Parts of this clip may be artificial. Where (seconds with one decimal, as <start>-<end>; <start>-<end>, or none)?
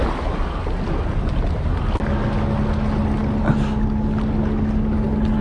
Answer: none